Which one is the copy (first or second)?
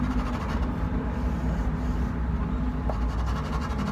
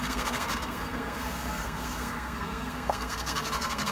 second